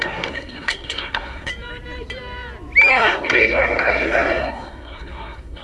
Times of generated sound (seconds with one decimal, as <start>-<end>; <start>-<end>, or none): 0.0-1.5; 2.9-5.6